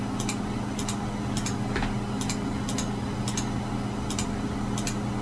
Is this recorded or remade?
recorded